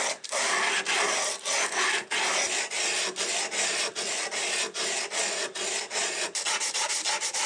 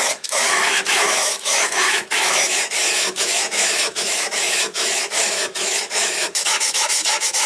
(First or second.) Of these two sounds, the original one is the first